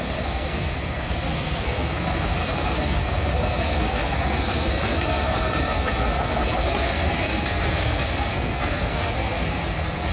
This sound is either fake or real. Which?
fake